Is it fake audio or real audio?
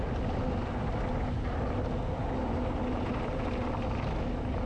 real